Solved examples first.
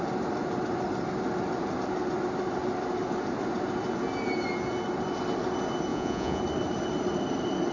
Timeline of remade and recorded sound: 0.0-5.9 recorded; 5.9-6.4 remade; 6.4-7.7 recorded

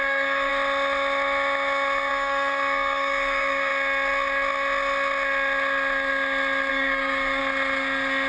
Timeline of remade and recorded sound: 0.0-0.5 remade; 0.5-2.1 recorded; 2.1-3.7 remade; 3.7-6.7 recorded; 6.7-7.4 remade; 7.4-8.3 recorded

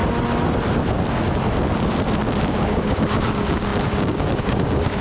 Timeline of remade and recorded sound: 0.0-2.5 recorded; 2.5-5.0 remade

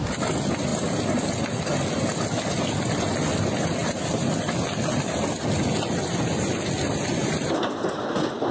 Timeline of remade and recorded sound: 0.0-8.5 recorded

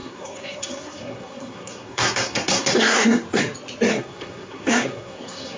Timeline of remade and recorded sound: 0.0-3.4 remade; 3.4-3.9 recorded; 3.9-5.6 remade

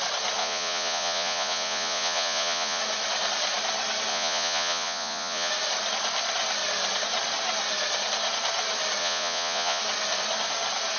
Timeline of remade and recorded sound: 0.0-0.4 recorded; 0.4-2.8 remade; 2.8-4.1 recorded; 4.1-5.5 remade; 5.5-9.0 recorded; 9.0-9.8 remade; 9.8-11.0 recorded

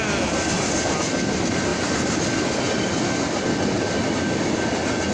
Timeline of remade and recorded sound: 0.0-5.1 recorded

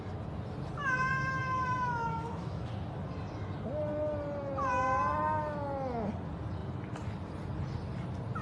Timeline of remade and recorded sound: 0.0-1.4 recorded; 1.4-2.7 remade; 2.7-8.4 recorded